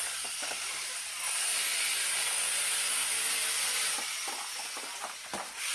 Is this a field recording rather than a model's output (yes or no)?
yes